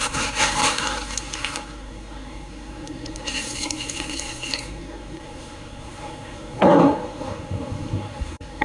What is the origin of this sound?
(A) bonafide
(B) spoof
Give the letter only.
B